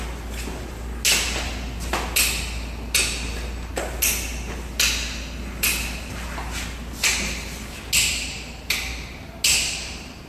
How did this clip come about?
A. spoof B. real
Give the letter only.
B